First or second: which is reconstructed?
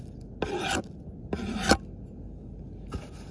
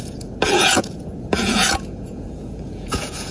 second